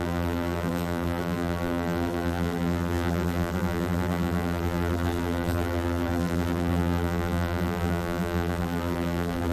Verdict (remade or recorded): remade